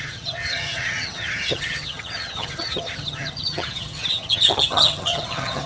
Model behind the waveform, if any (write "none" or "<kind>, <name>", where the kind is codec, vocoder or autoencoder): vocoder, HiFi-GAN